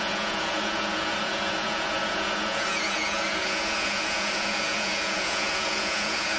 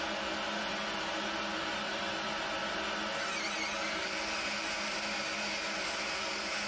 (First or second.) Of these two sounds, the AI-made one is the first